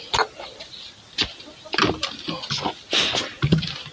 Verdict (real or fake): real